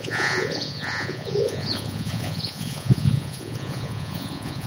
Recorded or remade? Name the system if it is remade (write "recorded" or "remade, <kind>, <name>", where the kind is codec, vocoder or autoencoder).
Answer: remade, vocoder, Vocos